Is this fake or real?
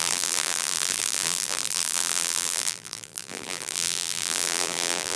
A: fake